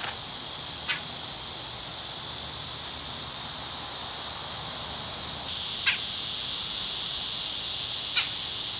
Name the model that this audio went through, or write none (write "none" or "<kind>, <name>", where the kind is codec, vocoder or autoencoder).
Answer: none